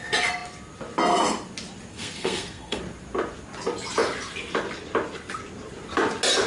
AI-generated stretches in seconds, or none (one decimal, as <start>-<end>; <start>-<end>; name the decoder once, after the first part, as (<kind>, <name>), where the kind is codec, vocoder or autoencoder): 1.9-2.8 (codec, SNAC)